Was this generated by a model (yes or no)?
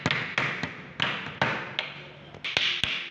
no